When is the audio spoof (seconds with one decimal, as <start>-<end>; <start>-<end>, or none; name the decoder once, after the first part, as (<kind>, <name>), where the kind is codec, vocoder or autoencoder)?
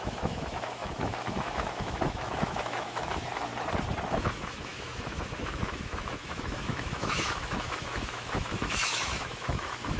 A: 0.0-3.5 (autoencoder, DAC-VAE); 4.1-10.0